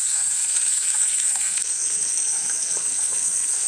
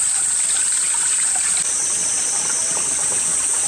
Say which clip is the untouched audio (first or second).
second